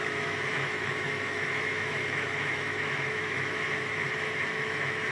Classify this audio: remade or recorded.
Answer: remade